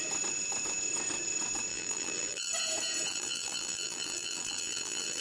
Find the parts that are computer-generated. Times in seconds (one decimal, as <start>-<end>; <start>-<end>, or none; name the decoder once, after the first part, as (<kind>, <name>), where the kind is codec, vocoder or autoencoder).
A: 1.7-2.5 (vocoder, BigVGAN v2); 3.1-5.2